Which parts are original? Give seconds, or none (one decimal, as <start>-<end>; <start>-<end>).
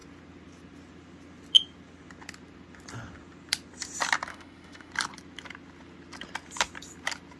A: 0.0-4.3; 4.9-7.4